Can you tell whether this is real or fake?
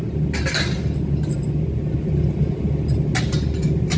real